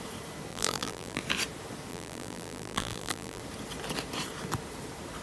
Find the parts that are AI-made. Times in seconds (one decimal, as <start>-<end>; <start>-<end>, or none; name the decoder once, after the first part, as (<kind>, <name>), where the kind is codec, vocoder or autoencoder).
0.5-1.2 (vocoder, BigVGAN v2); 1.9-3.4